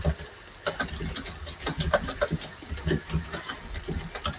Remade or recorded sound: recorded